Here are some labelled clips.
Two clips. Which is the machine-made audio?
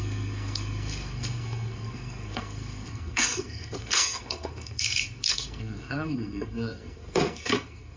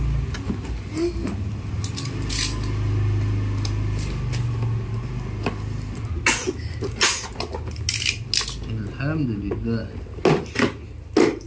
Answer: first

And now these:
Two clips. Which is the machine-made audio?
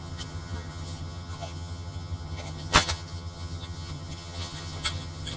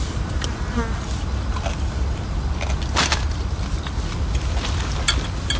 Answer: first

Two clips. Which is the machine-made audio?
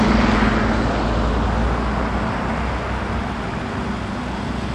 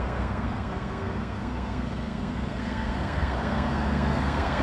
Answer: second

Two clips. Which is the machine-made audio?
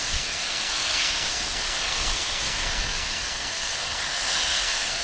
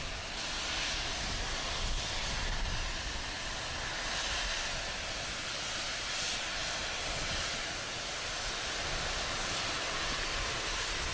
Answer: first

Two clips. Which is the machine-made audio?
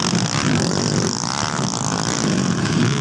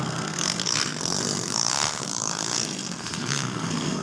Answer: second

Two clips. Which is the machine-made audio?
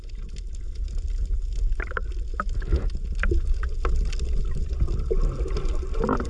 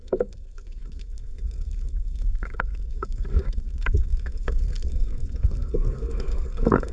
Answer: second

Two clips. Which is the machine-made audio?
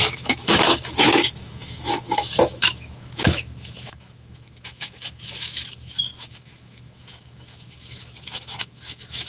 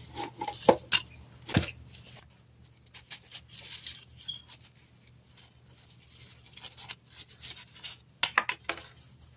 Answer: first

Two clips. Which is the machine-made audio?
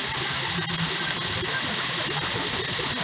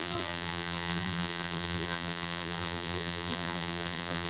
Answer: second